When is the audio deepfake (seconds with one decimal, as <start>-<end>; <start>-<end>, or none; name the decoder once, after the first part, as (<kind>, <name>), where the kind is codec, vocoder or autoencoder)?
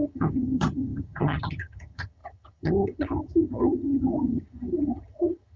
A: 0.0-5.6 (vocoder, HiFi-GAN)